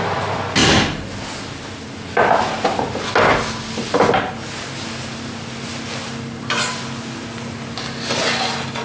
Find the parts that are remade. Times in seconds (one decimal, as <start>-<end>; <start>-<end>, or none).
none